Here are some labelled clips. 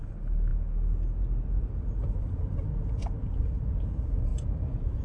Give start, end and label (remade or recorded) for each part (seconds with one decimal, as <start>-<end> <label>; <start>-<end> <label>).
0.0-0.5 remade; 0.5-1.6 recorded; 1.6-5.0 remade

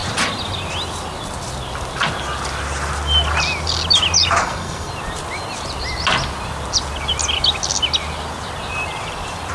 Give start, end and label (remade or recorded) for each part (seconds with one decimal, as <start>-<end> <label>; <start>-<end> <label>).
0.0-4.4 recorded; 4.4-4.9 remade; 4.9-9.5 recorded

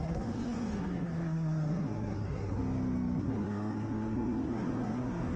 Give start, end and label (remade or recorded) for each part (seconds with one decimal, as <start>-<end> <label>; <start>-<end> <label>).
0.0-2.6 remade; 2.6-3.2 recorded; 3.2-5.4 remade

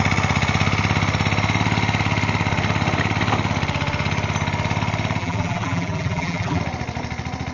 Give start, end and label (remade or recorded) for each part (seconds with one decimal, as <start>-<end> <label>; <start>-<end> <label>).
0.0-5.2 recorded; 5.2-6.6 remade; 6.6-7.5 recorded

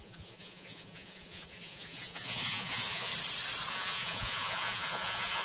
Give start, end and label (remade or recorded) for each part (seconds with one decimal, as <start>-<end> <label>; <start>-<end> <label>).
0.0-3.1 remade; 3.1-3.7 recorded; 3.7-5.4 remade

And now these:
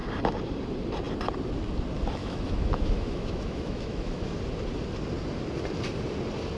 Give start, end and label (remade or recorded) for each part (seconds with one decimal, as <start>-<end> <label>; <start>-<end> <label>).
0.0-2.2 recorded; 2.2-4.2 remade; 4.2-6.6 recorded

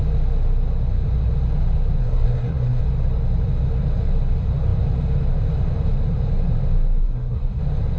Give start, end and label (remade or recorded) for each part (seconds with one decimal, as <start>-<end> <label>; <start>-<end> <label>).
0.0-2.0 recorded; 2.0-2.8 remade; 2.8-7.0 recorded; 7.0-7.6 remade; 7.6-8.0 recorded